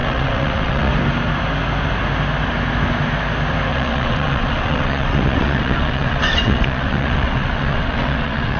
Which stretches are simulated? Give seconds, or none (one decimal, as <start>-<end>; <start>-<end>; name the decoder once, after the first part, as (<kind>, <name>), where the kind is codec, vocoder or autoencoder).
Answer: 0.0-0.9 (vocoder, WaveNeXt); 3.7-8.6